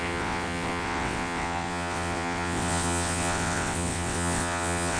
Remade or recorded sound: remade